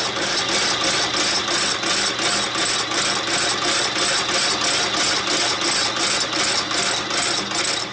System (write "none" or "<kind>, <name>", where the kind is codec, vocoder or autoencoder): none